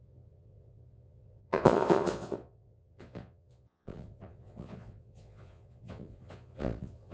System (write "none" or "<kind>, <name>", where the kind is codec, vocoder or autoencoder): vocoder, Vocos